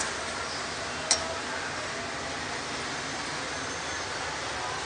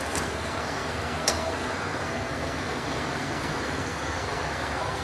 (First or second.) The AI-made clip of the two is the second